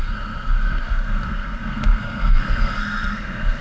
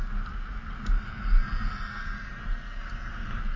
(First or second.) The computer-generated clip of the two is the first